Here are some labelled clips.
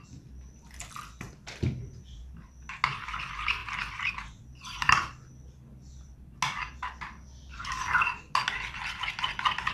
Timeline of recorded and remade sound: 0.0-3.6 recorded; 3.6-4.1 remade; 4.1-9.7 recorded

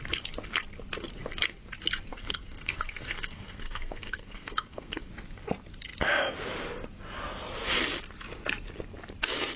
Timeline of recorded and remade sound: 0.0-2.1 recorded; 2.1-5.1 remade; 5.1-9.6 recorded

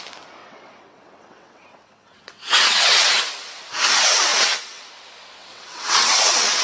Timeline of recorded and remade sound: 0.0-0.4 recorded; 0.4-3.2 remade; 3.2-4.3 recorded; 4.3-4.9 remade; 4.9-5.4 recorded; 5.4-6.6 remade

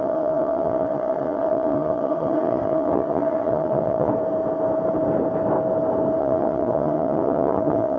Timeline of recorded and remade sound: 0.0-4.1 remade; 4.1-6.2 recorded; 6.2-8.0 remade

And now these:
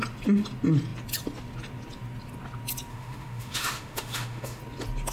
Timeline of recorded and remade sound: 0.0-2.9 recorded; 2.9-4.6 remade; 4.6-5.1 recorded